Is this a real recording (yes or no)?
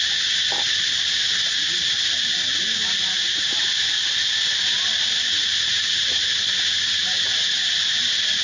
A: yes